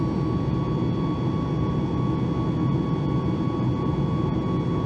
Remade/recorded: recorded